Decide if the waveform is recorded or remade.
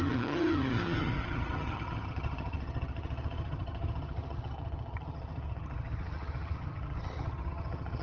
remade